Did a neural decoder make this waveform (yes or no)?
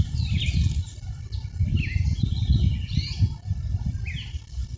yes